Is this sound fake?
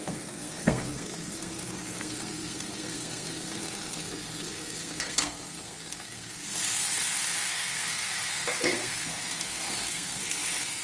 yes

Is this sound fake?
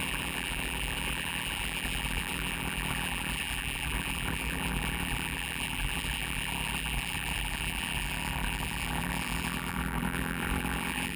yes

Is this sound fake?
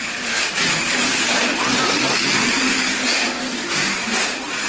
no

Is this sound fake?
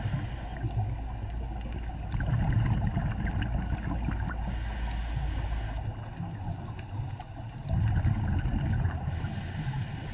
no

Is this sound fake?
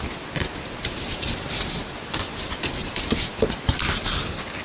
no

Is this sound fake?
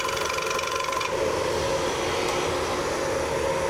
no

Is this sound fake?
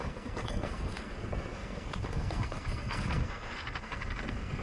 yes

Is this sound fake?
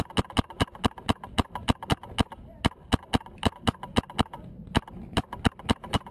no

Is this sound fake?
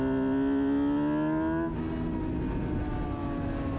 no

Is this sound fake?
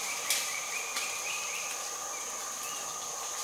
no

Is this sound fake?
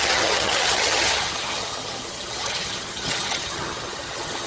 yes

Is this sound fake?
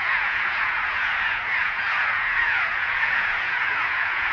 yes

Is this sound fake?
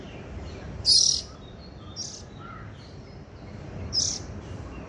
yes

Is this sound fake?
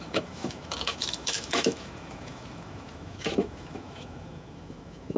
yes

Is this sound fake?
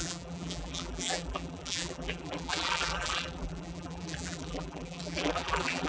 yes